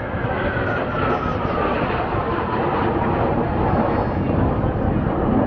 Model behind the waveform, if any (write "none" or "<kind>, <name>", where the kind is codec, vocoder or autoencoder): none